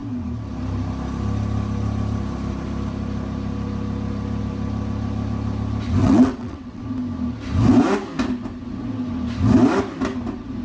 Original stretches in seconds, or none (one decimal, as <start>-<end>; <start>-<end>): 0.0-6.0; 6.8-10.6